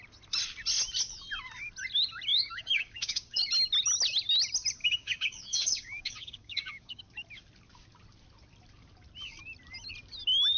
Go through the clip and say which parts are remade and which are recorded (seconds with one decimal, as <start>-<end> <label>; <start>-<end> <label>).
0.0-2.3 recorded; 2.3-3.4 remade; 3.4-4.8 recorded; 4.8-7.0 remade; 7.0-10.6 recorded